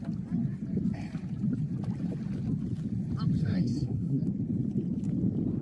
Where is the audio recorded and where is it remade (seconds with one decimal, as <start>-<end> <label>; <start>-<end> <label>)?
0.0-3.4 recorded; 3.4-4.2 remade; 4.2-5.6 recorded